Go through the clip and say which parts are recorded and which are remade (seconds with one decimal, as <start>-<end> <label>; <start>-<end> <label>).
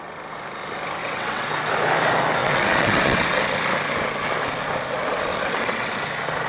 0.0-1.0 recorded; 1.0-1.5 remade; 1.5-2.4 recorded; 2.4-3.4 remade; 3.4-5.3 recorded; 5.3-5.9 remade; 5.9-6.5 recorded